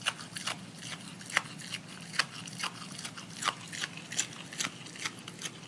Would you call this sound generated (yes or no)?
no